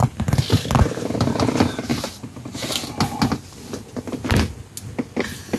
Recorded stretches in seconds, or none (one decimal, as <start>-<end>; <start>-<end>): 0.0-5.6